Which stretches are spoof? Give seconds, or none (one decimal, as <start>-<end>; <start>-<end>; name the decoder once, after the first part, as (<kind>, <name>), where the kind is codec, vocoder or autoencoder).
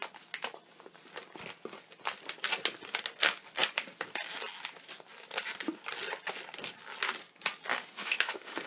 7.7-8.7 (autoencoder, DAC-VAE)